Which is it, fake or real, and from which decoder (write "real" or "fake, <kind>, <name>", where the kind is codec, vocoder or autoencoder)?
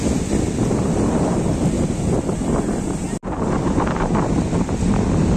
real